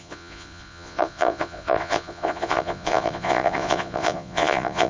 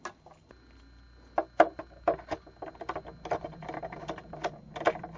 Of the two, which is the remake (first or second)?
first